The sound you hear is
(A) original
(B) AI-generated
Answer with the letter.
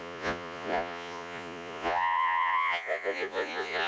B